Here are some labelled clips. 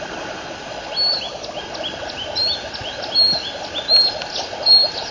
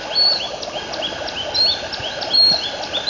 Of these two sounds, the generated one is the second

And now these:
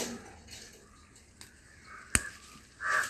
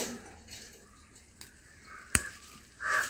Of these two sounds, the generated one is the second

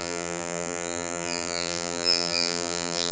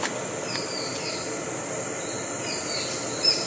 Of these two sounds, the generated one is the first